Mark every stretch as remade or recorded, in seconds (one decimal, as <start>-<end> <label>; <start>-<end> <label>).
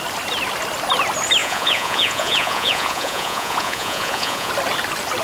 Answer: 0.0-1.4 recorded; 1.4-4.5 remade; 4.5-5.2 recorded